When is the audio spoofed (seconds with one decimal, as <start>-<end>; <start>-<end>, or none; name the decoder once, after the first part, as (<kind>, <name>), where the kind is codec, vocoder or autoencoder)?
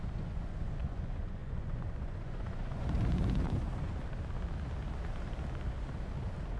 0.0-3.9 (vocoder, Vocos)